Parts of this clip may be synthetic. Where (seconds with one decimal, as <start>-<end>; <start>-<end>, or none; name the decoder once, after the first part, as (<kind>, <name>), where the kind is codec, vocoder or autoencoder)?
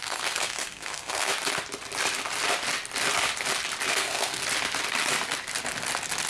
0.0-1.3 (codec, SNAC); 3.9-4.4